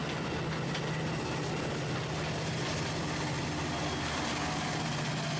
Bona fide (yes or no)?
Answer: yes